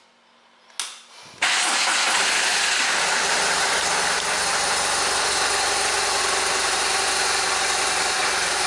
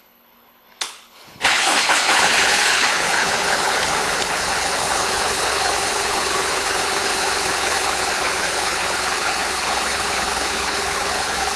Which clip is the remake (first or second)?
second